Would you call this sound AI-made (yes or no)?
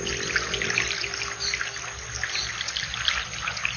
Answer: no